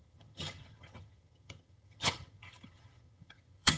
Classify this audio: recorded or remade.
remade